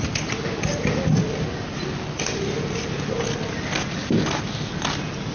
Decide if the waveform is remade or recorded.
recorded